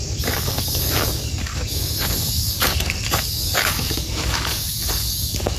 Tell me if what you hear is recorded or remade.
remade